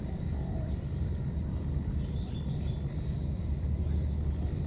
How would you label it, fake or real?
real